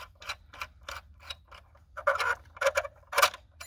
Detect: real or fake real